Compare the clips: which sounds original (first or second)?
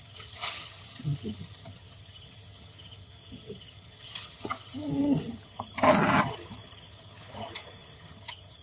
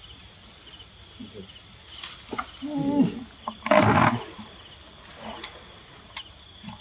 second